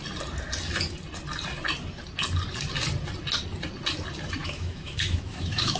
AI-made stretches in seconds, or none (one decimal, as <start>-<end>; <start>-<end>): 4.4-5.8